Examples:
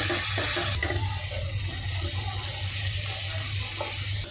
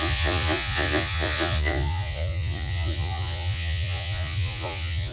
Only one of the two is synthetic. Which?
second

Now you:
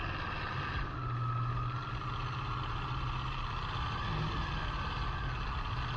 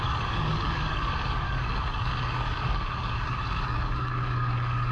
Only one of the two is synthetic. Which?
second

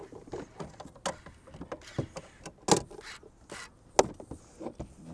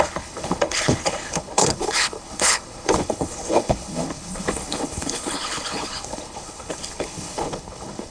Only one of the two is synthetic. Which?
second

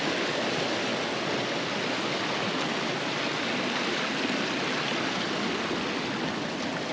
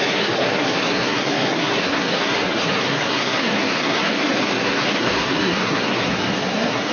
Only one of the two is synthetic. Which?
second